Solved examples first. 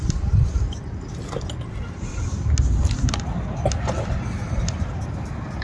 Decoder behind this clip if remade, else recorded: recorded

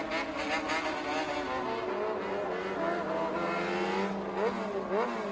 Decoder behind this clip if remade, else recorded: recorded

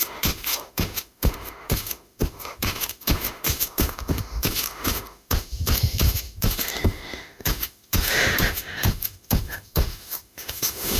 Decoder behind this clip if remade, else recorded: remade, autoencoder, DAC-VAE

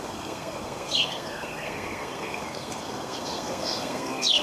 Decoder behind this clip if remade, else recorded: remade, codec, SNAC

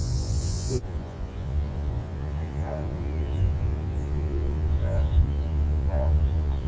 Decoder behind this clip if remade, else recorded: remade, vocoder, Vocos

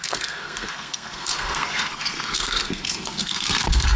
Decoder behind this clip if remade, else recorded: remade, codec, SNAC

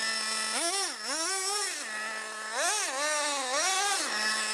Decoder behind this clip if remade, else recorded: recorded